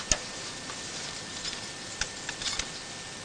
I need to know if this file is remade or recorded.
recorded